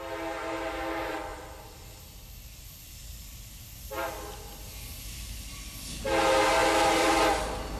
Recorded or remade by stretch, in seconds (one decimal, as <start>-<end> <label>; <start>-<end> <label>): 0.0-1.3 recorded; 1.3-6.0 remade; 6.0-6.6 recorded; 6.6-7.2 remade; 7.2-7.8 recorded

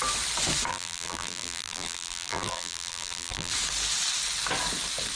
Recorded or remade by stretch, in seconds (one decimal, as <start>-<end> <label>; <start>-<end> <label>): 0.0-0.7 recorded; 0.7-3.5 remade; 3.5-5.2 recorded

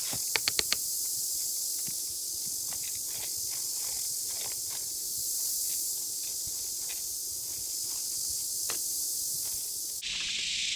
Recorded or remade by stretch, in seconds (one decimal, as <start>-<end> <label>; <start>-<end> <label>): 0.0-10.8 recorded

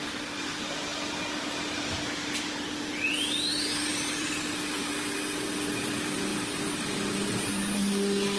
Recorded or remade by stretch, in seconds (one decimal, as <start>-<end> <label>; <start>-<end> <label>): 0.0-3.9 recorded; 3.9-4.9 remade; 4.9-8.4 recorded

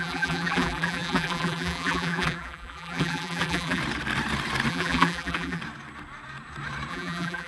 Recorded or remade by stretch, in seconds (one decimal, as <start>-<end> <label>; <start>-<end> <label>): 0.0-3.8 remade; 3.8-4.7 recorded; 4.7-5.6 remade; 5.6-6.9 recorded; 6.9-7.5 remade

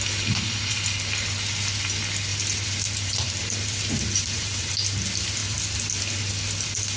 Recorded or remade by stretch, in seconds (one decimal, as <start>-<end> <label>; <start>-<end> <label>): 0.0-2.3 recorded; 2.3-4.7 remade; 4.7-7.0 recorded